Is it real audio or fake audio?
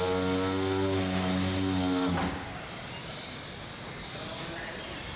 real